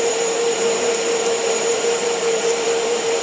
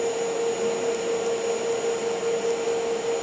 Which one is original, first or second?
second